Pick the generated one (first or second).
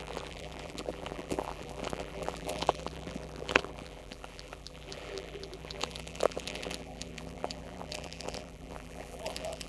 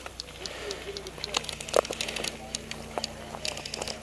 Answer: first